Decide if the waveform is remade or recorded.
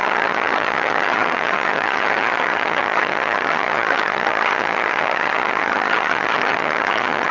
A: remade